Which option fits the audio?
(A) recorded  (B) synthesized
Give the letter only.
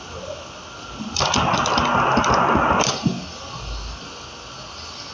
A